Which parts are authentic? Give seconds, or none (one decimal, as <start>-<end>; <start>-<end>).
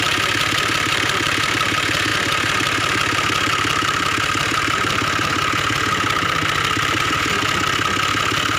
7.4-8.6